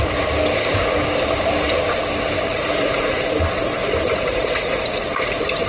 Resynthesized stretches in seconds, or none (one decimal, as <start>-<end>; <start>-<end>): 2.5-3.4; 3.8-5.0